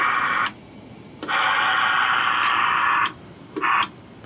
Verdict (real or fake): real